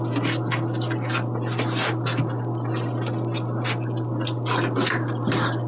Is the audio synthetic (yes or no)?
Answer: no